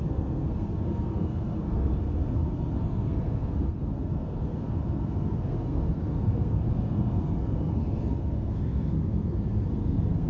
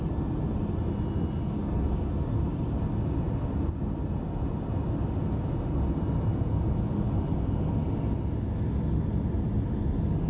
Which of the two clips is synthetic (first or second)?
first